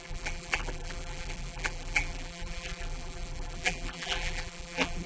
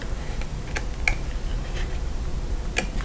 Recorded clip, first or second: second